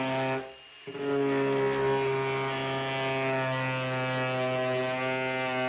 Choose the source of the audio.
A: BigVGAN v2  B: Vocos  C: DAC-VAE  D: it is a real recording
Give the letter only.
D